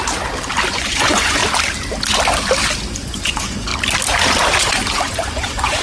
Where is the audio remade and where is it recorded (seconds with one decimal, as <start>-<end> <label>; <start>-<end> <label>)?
0.0-0.7 recorded; 0.7-1.4 remade; 1.4-2.9 recorded; 2.9-3.7 remade; 3.7-4.6 recorded; 4.6-5.8 remade